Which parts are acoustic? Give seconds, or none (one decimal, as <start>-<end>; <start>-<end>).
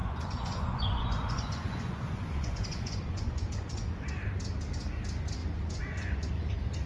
4.1-5.4; 6.3-6.9